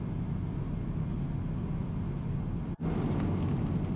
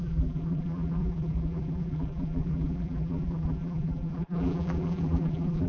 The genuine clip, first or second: first